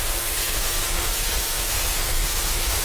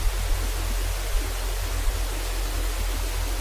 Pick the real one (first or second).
second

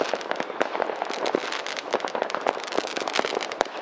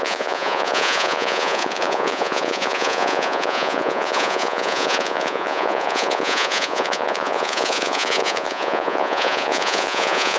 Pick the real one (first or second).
first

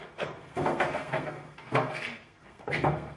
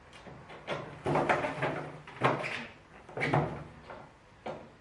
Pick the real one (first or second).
second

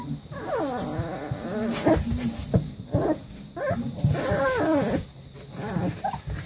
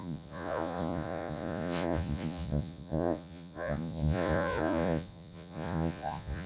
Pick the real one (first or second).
first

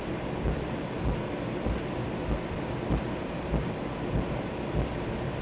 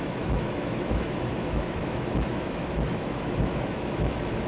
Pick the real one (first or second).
first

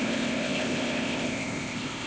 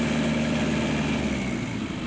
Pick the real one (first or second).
second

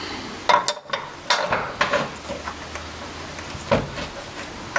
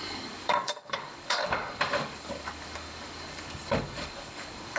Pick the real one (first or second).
first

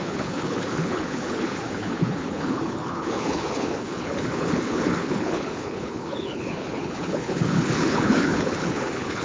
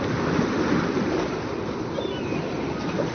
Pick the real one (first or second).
second